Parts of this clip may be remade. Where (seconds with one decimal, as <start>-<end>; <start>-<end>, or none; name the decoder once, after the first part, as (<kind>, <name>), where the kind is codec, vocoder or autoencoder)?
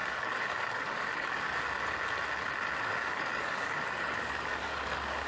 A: 0.0-1.5 (codec, DAC); 2.8-5.3